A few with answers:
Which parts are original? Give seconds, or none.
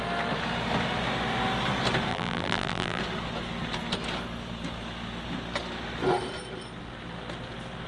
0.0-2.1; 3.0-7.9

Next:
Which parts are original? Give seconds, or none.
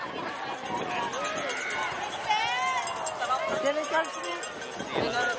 0.0-5.4